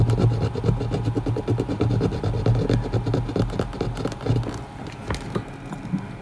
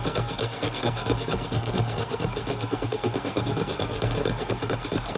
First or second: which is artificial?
second